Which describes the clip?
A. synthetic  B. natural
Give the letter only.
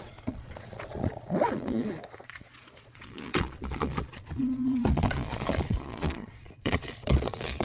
A